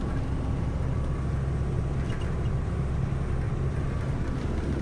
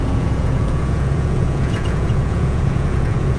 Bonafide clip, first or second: first